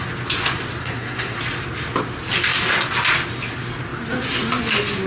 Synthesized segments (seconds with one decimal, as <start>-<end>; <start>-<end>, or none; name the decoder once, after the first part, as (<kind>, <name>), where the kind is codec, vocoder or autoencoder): 0.8-1.4 (codec, SNAC)